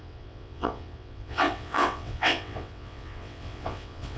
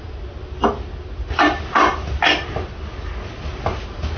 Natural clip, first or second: second